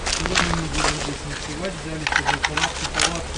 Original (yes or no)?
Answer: yes